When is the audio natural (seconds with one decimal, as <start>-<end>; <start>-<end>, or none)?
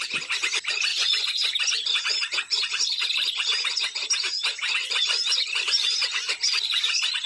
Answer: 0.0-0.9; 1.6-7.3